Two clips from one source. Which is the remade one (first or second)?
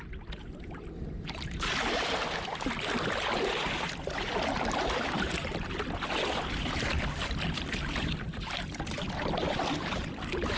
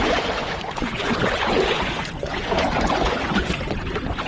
second